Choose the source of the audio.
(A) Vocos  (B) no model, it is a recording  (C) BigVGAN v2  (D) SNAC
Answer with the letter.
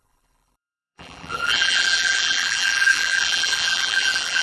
C